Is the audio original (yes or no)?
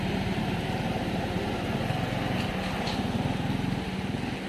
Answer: yes